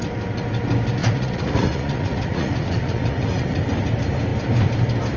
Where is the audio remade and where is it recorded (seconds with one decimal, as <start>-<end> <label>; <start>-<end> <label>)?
0.0-1.0 recorded; 1.0-3.6 remade; 3.6-5.2 recorded